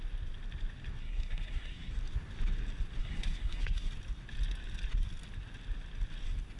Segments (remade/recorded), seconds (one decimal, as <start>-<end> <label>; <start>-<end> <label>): 0.0-1.0 recorded; 1.0-1.9 remade; 1.9-3.0 recorded; 3.0-3.9 remade; 3.9-6.6 recorded